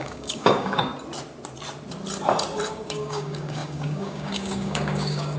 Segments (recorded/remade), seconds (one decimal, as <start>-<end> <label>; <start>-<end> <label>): 0.0-0.9 remade; 0.9-2.7 recorded; 2.7-5.4 remade